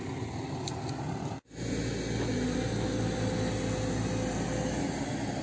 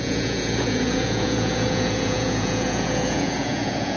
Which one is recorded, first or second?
first